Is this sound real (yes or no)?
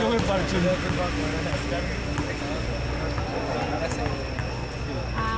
yes